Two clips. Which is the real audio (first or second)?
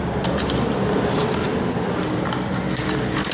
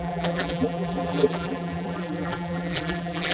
first